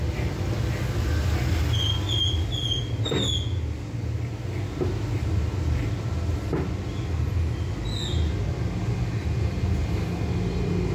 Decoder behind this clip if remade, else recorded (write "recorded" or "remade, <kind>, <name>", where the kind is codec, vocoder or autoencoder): recorded